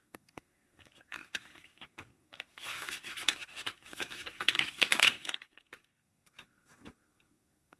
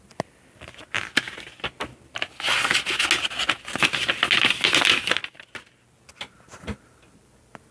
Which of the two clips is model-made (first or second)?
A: first